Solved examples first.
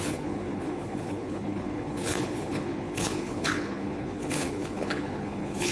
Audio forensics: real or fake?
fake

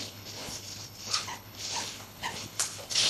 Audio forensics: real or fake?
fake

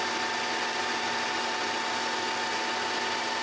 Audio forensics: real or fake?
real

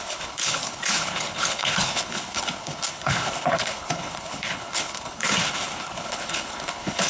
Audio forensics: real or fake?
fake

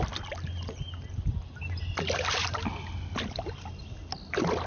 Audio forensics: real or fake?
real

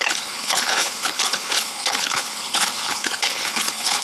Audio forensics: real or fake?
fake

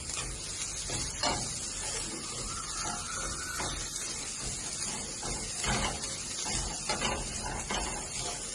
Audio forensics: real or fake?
real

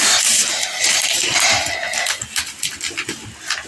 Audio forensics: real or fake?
real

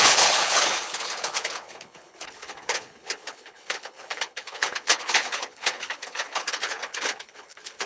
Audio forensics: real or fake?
fake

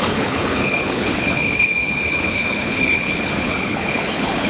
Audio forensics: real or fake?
fake